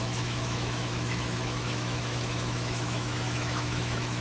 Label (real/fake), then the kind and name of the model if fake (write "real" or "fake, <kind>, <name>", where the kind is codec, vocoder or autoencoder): fake, autoencoder, DAC-VAE